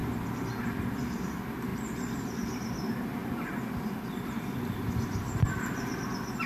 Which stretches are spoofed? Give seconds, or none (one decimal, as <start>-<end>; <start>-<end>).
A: none